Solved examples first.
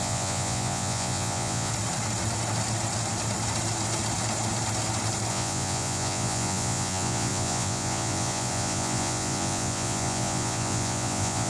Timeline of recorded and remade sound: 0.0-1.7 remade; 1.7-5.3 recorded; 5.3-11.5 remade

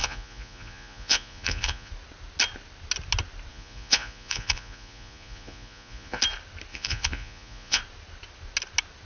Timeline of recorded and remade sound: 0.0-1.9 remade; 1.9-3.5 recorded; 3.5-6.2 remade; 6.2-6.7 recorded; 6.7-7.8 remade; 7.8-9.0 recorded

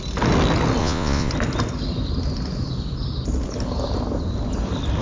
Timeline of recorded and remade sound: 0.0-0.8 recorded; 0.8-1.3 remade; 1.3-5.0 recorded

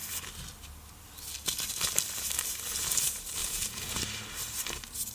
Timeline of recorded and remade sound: 0.0-3.4 recorded; 3.4-3.9 remade; 3.9-5.1 recorded

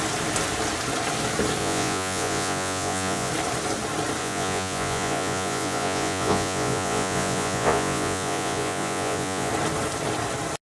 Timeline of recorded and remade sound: 0.0-1.6 recorded; 1.6-3.3 remade; 3.3-4.2 recorded; 4.2-9.5 remade; 9.5-10.8 recorded